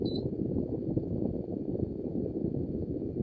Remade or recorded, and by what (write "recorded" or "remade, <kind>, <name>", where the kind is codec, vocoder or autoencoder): remade, autoencoder, DAC-VAE